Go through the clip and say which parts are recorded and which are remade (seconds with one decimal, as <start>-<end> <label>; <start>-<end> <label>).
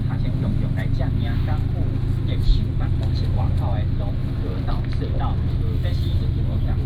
0.0-2.5 recorded; 2.5-3.4 remade; 3.4-4.2 recorded; 4.2-4.7 remade; 4.7-5.8 recorded; 5.8-6.4 remade; 6.4-6.9 recorded